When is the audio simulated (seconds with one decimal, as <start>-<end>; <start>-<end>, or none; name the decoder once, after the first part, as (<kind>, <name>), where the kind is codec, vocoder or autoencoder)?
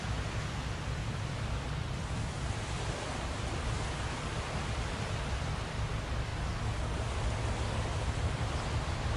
0.0-6.3 (vocoder, BigVGAN v2); 8.0-9.2